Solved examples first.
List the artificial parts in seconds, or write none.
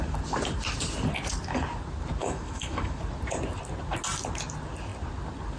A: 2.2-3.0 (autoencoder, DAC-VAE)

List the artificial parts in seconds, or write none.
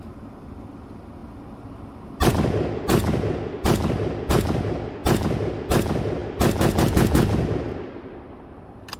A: none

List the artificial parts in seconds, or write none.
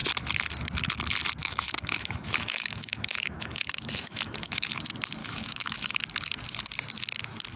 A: 1.4-4.8 (autoencoder, DAC-VAE); 5.2-6.0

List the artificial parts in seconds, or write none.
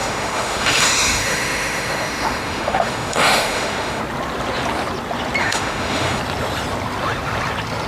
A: 0.0-4.0 (autoencoder, DAC-VAE); 5.4-6.2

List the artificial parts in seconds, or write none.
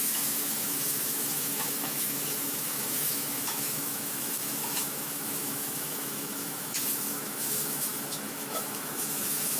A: 0.0-9.6 (autoencoder, DAC-VAE)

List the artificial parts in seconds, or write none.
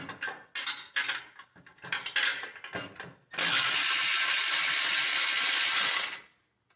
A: none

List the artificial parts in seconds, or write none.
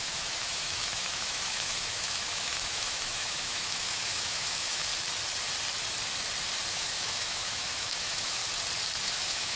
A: 0.0-4.9 (autoencoder, DAC-VAE); 6.7-8.4; 9.0-9.6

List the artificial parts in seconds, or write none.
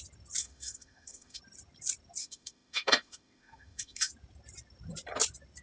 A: 0.4-1.4 (autoencoder, DAC-VAE); 2.2-4.1